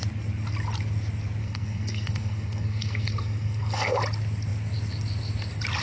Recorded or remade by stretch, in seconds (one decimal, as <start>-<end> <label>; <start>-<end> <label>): 0.0-1.4 recorded; 1.4-4.0 remade; 4.0-5.8 recorded